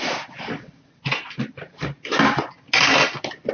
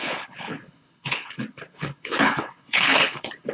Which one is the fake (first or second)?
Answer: second